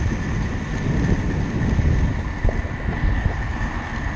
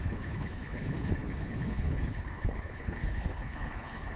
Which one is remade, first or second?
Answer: second